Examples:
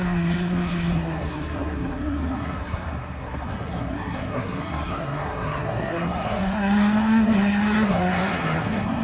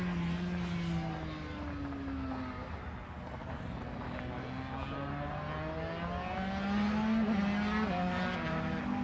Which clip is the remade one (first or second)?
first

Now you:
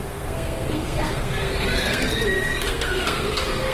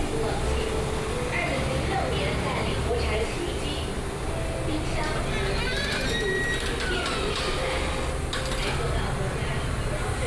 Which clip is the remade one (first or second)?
first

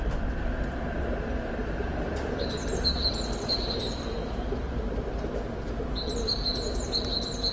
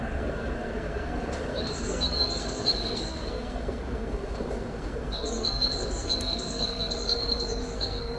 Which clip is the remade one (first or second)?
second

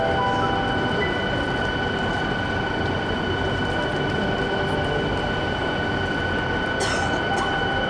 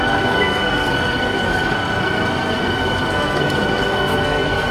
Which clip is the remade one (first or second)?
second